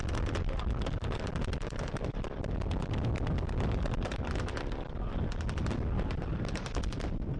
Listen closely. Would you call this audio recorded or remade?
recorded